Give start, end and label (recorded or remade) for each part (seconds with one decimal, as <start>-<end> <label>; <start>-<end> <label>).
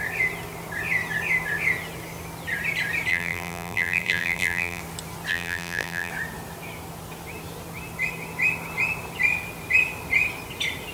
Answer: 0.0-3.1 recorded; 3.1-4.8 remade; 4.8-5.3 recorded; 5.3-6.1 remade; 6.1-10.9 recorded